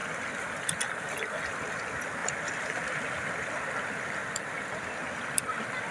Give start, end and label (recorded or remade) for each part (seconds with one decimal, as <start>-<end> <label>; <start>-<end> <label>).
0.0-5.9 recorded